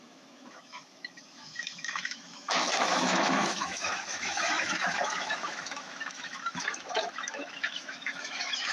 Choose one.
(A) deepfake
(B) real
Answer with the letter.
A